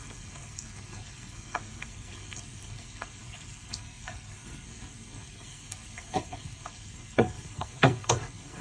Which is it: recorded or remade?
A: remade